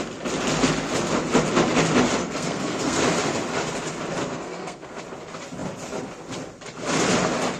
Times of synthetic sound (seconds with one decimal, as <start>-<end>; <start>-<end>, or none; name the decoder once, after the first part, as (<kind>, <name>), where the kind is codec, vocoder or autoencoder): 2.2-3.0 (codec, SNAC); 4.2-5.0